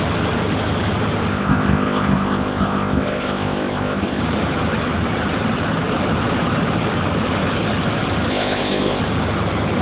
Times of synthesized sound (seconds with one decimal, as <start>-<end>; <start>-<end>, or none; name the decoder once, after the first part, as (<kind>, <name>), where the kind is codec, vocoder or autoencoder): 1.3-4.2 (codec, ZipCodec); 8.3-9.0